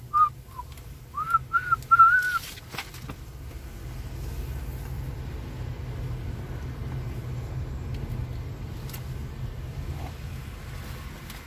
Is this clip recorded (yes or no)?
yes